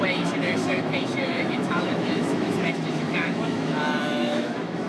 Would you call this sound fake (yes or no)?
yes